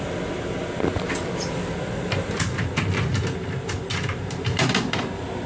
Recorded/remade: remade